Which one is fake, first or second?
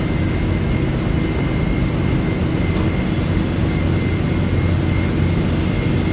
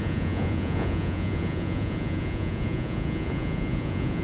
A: second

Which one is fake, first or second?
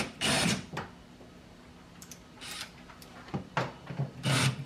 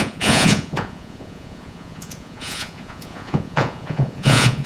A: second